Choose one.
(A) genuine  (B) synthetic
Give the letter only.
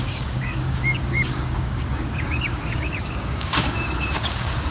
B